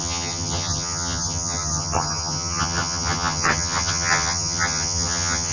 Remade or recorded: remade